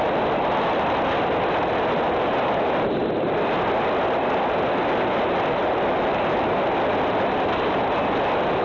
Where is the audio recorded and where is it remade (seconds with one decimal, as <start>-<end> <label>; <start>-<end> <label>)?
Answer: 0.0-8.6 recorded

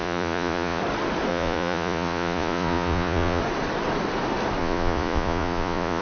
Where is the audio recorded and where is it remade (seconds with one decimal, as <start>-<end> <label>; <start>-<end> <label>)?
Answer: 0.0-0.8 remade; 0.8-1.3 recorded; 1.3-3.4 remade; 3.4-4.6 recorded; 4.6-6.0 remade